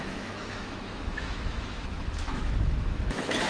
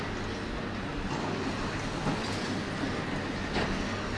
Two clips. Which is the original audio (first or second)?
second